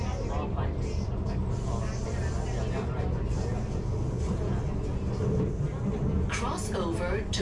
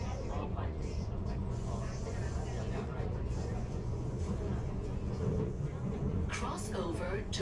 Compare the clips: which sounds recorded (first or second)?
first